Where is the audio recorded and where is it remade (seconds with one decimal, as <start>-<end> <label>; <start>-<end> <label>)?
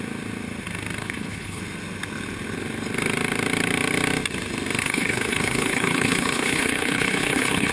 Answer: 0.0-1.0 recorded; 1.0-1.6 remade; 1.6-4.8 recorded; 4.8-7.7 remade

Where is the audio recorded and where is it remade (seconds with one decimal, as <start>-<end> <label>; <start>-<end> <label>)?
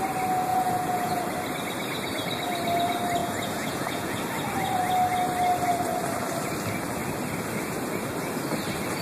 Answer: 0.0-0.5 recorded; 0.5-1.2 remade; 1.2-3.2 recorded; 3.2-4.2 remade; 4.2-9.0 recorded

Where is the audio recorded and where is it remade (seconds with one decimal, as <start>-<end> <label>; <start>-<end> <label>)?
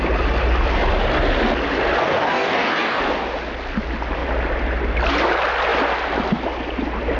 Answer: 0.0-2.0 recorded; 2.0-3.0 remade; 3.0-7.2 recorded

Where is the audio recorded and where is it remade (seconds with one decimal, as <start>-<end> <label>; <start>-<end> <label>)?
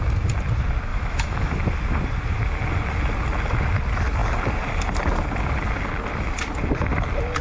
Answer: 0.0-0.9 recorded; 0.9-1.6 remade; 1.6-7.4 recorded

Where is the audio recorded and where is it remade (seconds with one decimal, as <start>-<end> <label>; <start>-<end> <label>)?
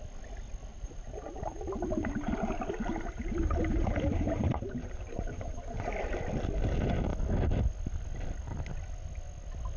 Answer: 0.0-0.7 recorded; 0.7-5.9 remade; 5.9-9.8 recorded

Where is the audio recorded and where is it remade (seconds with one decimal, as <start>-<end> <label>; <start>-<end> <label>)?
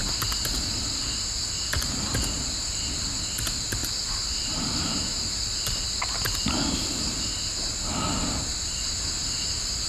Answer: 0.0-9.9 recorded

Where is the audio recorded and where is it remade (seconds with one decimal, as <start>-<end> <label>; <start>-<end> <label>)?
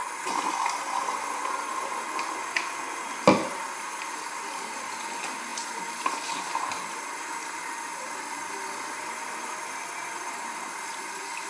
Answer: 0.0-4.4 recorded; 4.4-11.5 remade